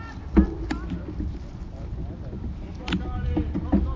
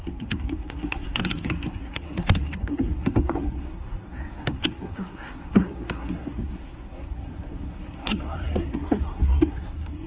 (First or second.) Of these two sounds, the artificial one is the second